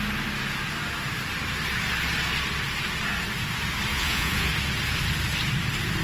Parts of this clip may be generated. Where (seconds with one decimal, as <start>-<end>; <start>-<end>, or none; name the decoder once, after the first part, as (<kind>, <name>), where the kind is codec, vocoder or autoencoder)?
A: 3.9-4.5 (vocoder, Vocos)